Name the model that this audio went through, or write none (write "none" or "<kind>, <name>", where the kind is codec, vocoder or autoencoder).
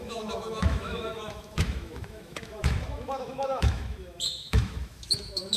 autoencoder, DAC-VAE